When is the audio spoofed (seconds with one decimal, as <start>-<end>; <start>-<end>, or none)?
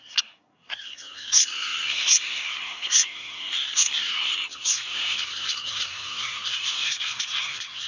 0.0-7.9